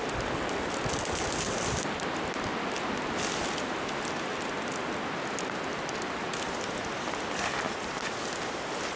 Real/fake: real